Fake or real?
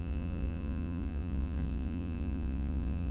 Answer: fake